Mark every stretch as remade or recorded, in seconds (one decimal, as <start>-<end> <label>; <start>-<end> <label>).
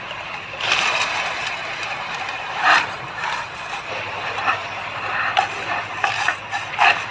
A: 0.0-1.6 recorded; 1.6-3.6 remade; 3.6-7.1 recorded